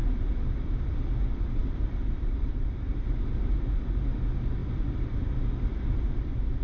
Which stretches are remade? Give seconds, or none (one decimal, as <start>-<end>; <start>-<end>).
0.0-0.8; 1.6-3.6; 4.6-6.6